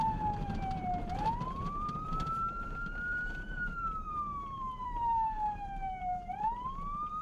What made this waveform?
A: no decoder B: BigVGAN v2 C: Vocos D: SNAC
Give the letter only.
B